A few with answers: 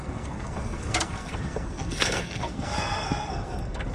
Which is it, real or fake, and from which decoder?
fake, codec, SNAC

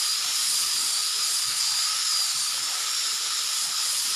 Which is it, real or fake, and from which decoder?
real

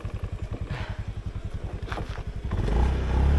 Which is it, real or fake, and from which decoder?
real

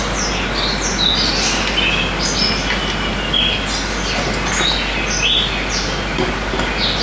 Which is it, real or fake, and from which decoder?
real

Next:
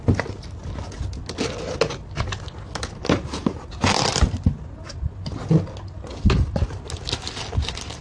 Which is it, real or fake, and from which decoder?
real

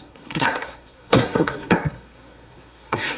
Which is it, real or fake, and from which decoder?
fake, codec, SNAC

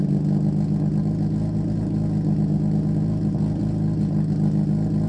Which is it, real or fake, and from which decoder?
real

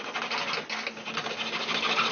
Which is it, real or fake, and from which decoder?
real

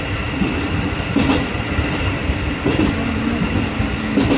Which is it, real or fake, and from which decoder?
real